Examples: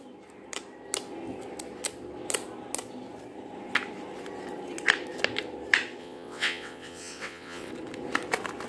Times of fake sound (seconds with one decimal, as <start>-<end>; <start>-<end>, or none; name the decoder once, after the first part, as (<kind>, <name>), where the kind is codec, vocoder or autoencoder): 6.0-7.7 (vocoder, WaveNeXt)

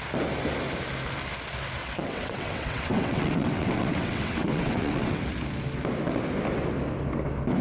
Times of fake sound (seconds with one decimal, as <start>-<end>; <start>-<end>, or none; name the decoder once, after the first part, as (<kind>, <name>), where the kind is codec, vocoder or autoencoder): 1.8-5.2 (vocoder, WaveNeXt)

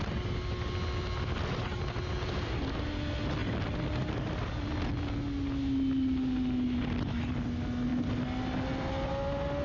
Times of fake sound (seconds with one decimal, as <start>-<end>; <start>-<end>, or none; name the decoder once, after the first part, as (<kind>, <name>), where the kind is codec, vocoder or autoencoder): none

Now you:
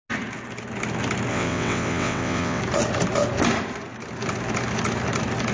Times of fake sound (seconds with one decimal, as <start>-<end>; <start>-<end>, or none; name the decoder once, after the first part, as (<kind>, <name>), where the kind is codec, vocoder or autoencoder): 1.3-2.6 (vocoder, WaveNeXt)

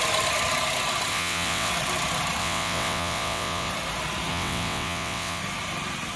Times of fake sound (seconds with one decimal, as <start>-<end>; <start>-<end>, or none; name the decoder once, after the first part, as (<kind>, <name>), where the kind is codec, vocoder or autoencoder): 1.1-1.7 (vocoder, WaveNeXt); 2.4-3.7; 4.3-5.4

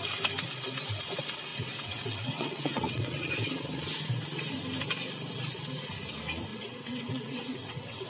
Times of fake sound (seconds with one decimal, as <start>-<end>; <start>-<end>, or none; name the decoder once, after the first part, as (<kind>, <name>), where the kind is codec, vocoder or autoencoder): 1.5-3.3 (vocoder, WaveNeXt); 6.5-8.1

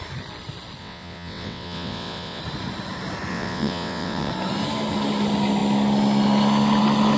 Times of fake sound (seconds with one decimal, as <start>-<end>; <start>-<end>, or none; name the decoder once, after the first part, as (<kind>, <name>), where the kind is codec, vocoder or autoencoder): 0.8-2.4 (vocoder, WaveNeXt); 3.3-4.3